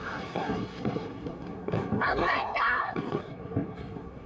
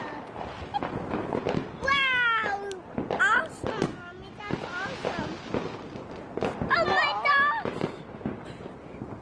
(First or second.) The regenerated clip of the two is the first